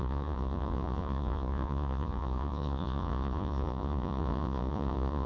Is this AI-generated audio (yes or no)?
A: yes